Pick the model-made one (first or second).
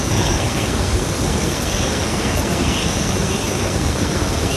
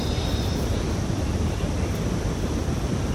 first